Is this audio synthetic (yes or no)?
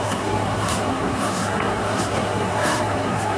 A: yes